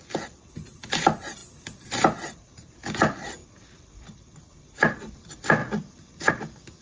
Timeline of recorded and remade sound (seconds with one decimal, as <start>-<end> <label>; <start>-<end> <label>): 0.0-6.8 recorded